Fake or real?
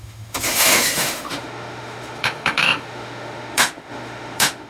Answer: fake